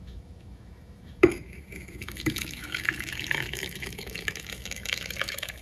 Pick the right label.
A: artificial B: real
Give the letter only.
A